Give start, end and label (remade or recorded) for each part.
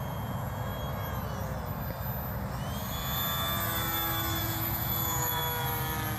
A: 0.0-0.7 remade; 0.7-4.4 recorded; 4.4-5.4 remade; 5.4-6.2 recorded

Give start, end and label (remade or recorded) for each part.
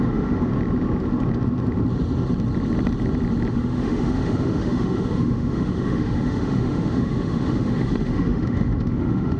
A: 0.0-0.5 remade; 0.5-3.5 recorded; 3.5-9.4 remade